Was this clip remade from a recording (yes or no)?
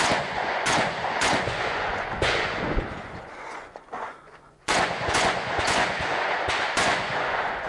yes